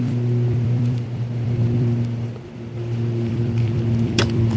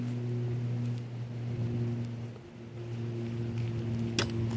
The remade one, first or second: first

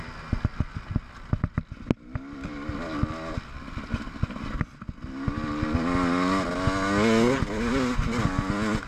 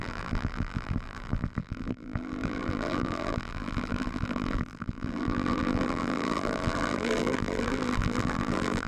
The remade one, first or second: second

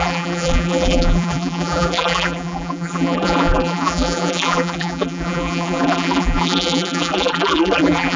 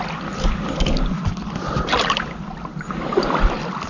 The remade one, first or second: first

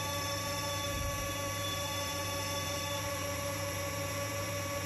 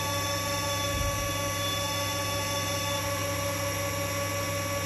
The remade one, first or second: first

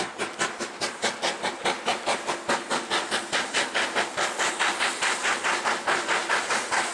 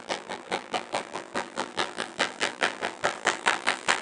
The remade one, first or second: second